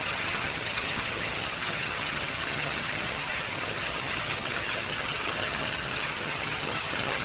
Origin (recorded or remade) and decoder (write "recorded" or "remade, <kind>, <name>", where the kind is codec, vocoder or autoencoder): remade, vocoder, HiFi-GAN